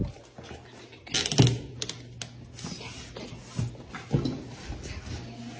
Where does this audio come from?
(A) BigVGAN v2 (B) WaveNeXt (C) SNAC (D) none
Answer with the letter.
D